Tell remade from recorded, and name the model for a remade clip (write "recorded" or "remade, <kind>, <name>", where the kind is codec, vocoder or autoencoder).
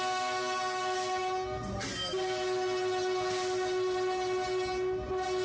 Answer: recorded